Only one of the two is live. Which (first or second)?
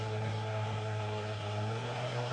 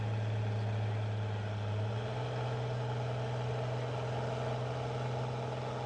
second